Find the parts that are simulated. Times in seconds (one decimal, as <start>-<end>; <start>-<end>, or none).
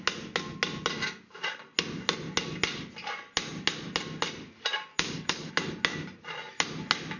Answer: 4.9-5.5